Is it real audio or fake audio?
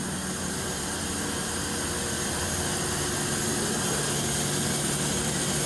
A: real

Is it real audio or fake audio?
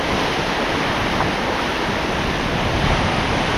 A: real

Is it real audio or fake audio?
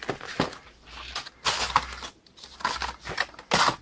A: real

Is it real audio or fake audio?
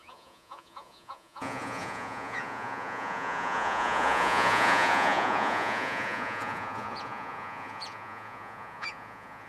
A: fake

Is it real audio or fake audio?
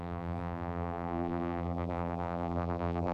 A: fake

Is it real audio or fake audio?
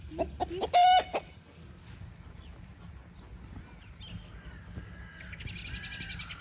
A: real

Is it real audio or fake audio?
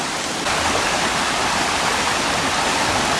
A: real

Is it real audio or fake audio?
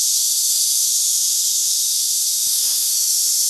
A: fake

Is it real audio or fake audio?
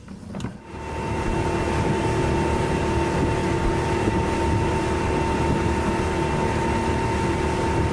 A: real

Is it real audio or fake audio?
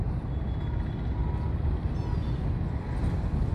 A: real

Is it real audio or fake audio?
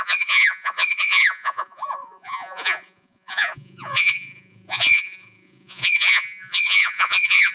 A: fake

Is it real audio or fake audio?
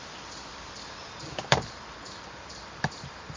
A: fake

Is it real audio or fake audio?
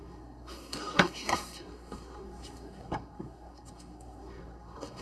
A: fake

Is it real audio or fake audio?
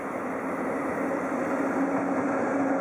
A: real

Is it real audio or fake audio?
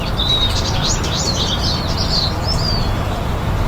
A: real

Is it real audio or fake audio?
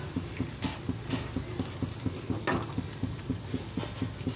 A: real